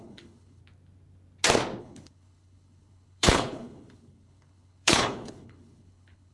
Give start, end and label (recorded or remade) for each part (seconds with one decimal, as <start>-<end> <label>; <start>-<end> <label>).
0.0-0.6 remade; 0.6-1.8 recorded; 1.8-6.3 remade